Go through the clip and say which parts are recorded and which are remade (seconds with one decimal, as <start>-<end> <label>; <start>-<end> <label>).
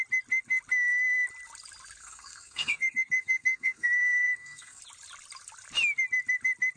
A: 0.0-2.0 recorded; 2.0-4.8 remade; 4.8-6.8 recorded